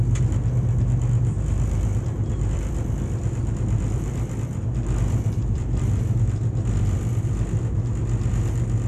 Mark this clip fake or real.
fake